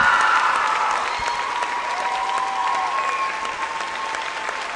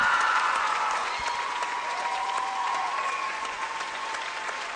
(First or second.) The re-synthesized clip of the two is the second